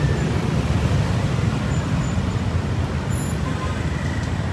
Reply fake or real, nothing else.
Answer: real